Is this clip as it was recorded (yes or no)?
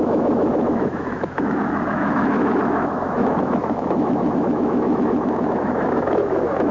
no